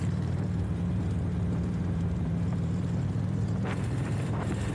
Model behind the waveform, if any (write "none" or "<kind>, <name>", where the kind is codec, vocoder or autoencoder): vocoder, BigVGAN v2